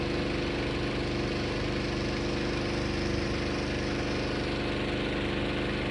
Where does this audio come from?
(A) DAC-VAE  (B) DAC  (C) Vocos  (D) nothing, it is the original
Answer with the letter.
D